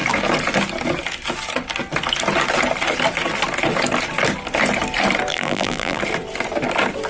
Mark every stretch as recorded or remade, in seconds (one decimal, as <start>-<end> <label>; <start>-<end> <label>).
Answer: 0.0-5.3 recorded; 5.3-6.0 remade; 6.0-7.1 recorded